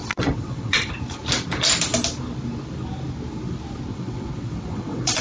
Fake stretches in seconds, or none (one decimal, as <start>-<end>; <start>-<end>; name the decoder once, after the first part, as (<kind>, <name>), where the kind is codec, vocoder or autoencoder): 0.0-0.9 (vocoder, WaveNeXt); 3.9-5.2